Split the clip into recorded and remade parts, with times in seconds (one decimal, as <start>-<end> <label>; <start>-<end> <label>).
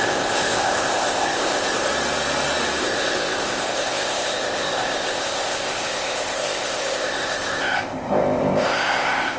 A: 0.0-1.9 remade; 1.9-2.8 recorded; 2.8-9.4 remade